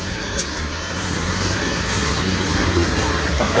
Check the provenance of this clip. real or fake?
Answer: fake